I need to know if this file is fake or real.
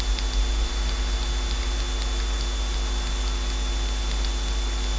real